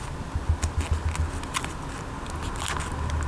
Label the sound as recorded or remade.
recorded